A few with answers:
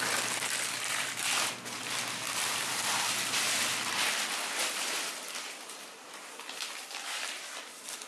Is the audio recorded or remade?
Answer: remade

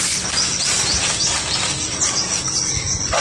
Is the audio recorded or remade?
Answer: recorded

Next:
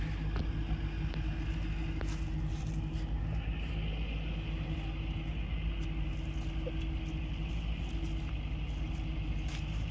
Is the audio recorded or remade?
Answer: recorded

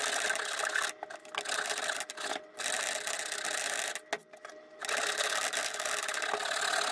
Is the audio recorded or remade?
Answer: recorded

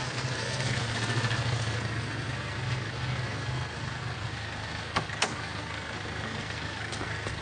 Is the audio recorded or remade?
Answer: remade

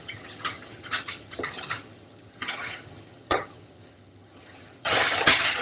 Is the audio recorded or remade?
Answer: remade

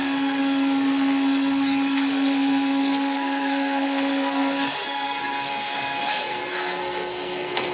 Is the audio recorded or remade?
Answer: remade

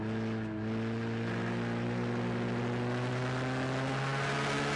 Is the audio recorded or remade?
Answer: recorded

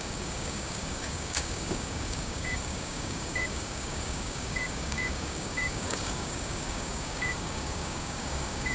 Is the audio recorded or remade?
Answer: remade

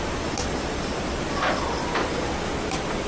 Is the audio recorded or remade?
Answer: remade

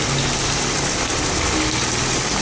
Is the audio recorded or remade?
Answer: recorded